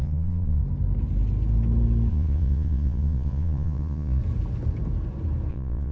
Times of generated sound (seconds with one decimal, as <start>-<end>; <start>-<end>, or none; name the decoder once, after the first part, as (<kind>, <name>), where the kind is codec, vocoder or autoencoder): 0.0-0.6 (vocoder, Vocos); 2.1-4.2; 5.5-5.9